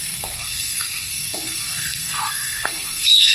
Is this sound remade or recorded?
remade